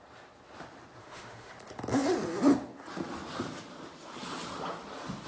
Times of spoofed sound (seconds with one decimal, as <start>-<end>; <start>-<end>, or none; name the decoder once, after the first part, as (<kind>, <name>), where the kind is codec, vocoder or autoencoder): 1.0-1.5 (autoencoder, DAC-VAE)